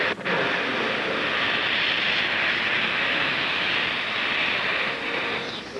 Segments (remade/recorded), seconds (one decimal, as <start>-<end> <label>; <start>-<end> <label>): 0.0-5.8 recorded